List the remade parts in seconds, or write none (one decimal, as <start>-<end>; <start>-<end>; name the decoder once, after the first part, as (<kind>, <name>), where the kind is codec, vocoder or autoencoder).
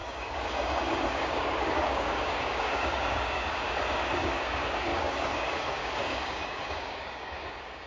0.0-7.9 (codec, DAC)